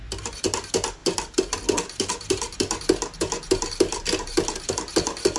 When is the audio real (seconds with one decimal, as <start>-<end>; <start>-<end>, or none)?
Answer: 0.0-5.4